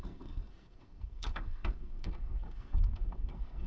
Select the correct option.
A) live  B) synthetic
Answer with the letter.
B